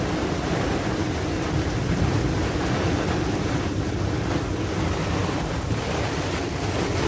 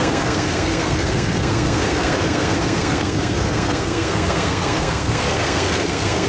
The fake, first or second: second